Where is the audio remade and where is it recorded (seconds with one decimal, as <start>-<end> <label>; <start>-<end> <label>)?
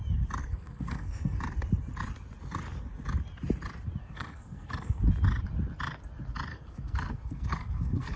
0.0-0.4 recorded; 0.4-1.4 remade; 1.4-4.0 recorded; 4.0-5.0 remade; 5.0-6.5 recorded; 6.5-8.2 remade